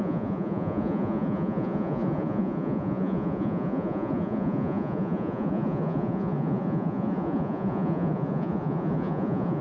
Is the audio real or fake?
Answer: fake